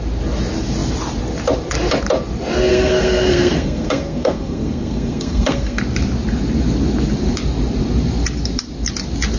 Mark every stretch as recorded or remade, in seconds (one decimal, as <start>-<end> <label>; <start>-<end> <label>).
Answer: 0.0-2.7 recorded; 2.7-5.8 remade; 5.8-9.4 recorded